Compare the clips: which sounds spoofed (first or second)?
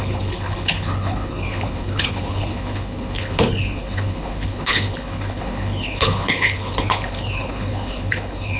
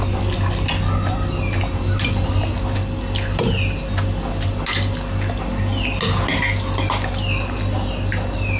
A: first